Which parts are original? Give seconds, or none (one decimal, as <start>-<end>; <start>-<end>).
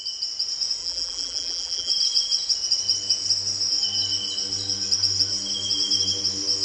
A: 0.0-0.8; 1.9-6.6